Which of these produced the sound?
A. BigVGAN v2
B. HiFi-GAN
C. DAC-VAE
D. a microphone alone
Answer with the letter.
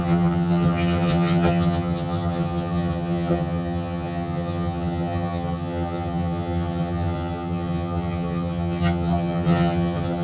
B